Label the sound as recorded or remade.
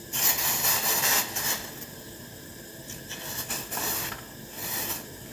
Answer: recorded